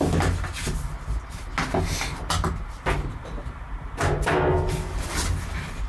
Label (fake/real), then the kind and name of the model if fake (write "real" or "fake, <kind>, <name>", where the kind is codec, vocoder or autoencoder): real